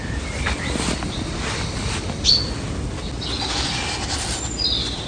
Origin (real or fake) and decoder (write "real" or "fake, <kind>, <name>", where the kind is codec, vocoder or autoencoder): real